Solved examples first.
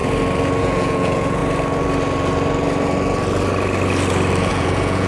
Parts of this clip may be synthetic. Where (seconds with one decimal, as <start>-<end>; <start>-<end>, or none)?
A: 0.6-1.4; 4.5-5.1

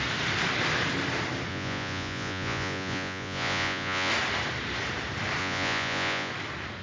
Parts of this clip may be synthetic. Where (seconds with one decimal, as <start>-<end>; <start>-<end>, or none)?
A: 1.5-4.1; 5.4-6.3

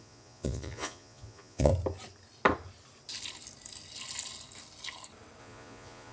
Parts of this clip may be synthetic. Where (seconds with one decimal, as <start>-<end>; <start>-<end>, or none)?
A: 0.0-1.7; 5.4-6.1

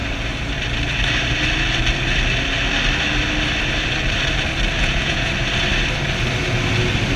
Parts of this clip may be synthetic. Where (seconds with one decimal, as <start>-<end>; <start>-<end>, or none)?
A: 4.8-5.3

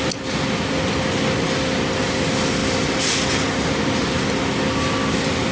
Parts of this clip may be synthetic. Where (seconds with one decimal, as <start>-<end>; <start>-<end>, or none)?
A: none

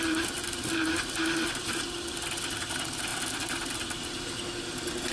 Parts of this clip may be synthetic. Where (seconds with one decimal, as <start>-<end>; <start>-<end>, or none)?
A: none